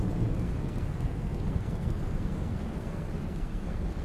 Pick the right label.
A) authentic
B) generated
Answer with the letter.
B